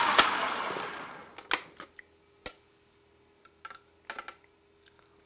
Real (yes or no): yes